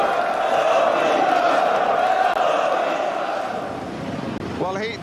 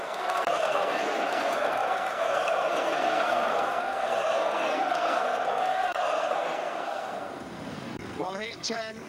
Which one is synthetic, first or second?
second